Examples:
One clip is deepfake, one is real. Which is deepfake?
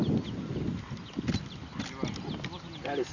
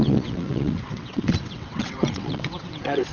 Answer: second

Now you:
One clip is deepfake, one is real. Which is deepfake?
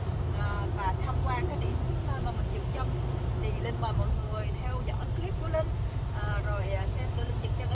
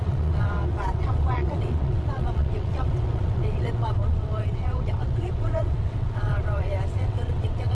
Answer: second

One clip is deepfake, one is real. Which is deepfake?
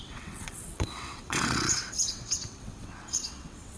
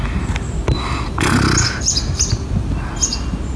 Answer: first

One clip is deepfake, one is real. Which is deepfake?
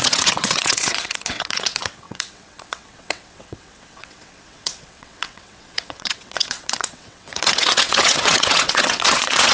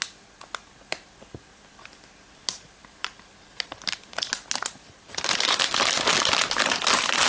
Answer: first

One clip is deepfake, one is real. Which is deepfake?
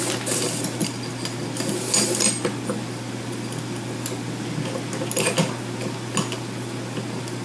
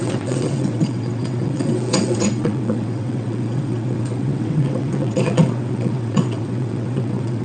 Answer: second